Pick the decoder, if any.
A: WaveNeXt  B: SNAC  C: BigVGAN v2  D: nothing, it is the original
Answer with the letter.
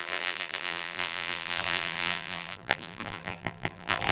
C